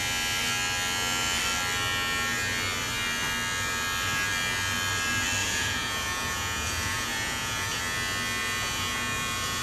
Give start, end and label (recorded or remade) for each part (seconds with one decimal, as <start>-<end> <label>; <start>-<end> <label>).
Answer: 0.0-5.4 recorded; 5.4-7.8 remade; 7.8-8.4 recorded; 8.4-9.6 remade